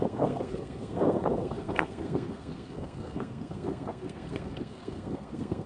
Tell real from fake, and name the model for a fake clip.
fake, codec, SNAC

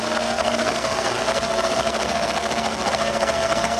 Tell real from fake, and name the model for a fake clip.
fake, codec, SNAC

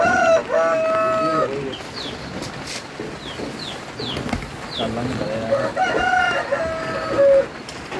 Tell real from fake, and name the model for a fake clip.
real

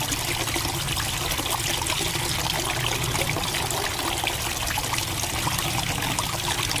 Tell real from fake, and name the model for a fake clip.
real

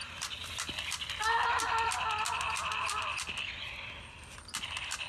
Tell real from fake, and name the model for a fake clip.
real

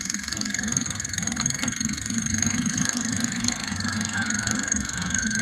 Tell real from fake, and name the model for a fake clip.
fake, codec, SNAC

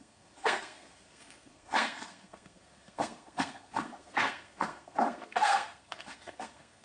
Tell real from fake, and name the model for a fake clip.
fake, codec, SNAC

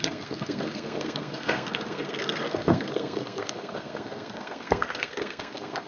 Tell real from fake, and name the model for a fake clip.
fake, codec, SNAC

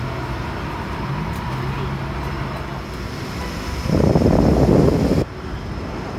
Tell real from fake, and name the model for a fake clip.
real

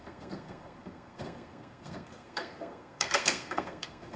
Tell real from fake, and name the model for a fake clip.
fake, codec, SNAC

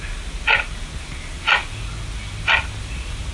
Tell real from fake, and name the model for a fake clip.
real